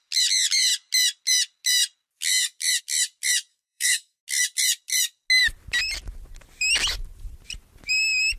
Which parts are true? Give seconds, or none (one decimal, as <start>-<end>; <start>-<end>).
0.0-3.5; 4.2-8.4